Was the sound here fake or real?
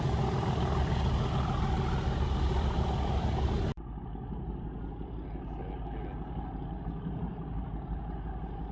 real